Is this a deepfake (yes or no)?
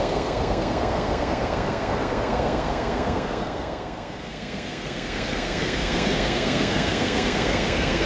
yes